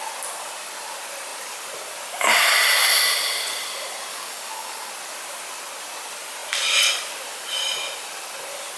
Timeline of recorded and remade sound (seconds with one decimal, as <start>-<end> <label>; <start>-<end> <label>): 0.0-4.1 recorded; 4.1-4.9 remade; 4.9-8.8 recorded